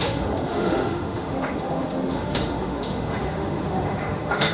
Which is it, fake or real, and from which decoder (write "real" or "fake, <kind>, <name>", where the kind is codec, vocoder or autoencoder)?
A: fake, autoencoder, DAC-VAE